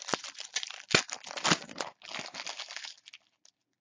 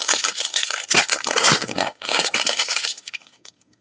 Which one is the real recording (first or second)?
first